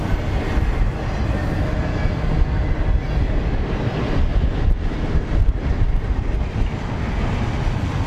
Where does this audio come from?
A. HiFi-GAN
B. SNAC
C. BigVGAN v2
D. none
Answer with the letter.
D